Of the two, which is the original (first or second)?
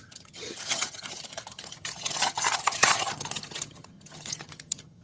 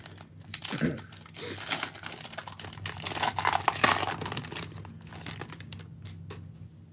second